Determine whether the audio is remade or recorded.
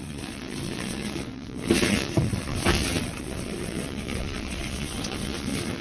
remade